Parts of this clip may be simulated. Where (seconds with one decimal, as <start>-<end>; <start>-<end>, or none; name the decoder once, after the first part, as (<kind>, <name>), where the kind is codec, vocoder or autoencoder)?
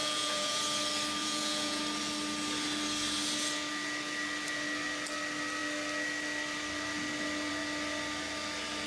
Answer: 0.0-0.6 (vocoder, Vocos); 1.2-1.8